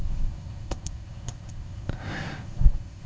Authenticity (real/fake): fake